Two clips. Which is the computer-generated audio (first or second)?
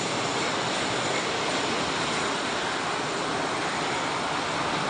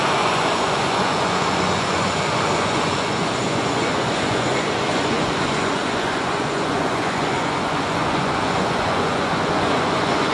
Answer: second